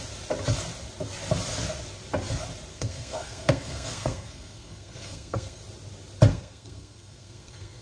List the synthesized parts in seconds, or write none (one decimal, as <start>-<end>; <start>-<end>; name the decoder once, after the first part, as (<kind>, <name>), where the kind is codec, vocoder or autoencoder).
2.7-5.6 (codec, SNAC); 6.3-7.8